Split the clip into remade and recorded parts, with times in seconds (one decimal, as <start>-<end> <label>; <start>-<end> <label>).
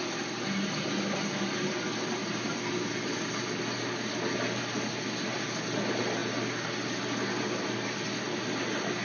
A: 0.0-2.2 recorded; 2.2-2.9 remade; 2.9-9.0 recorded